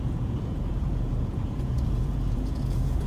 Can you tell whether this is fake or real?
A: fake